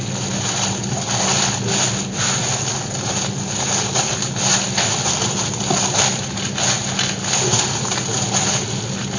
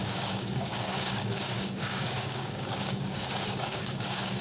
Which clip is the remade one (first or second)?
second